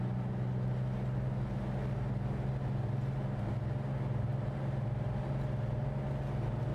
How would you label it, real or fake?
real